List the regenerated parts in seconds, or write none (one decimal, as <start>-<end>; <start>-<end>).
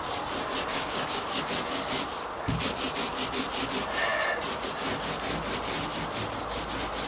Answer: 0.7-1.4